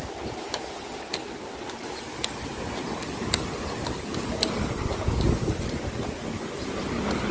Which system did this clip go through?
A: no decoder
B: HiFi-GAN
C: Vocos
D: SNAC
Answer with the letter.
A